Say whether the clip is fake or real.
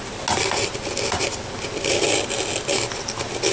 real